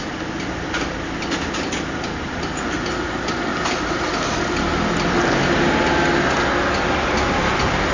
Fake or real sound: real